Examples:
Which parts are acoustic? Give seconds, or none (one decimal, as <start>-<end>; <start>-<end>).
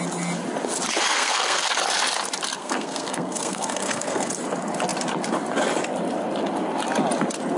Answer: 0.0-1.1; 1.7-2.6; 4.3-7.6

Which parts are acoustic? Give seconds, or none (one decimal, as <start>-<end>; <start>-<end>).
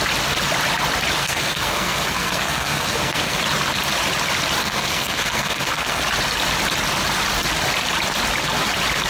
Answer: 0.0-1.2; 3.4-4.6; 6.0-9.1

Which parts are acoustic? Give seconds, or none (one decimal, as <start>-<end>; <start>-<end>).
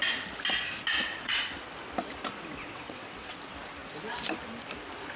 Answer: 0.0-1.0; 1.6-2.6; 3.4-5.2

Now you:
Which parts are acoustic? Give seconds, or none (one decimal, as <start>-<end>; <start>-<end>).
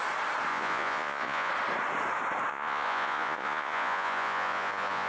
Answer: 0.0-0.5; 1.5-2.5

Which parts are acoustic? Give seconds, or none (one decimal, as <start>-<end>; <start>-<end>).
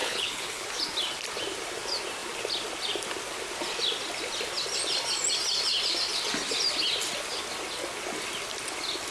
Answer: 0.7-9.1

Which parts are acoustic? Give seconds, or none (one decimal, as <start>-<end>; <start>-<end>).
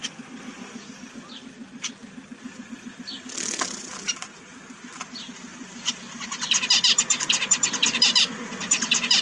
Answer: 0.0-0.6; 1.6-2.7; 3.9-4.9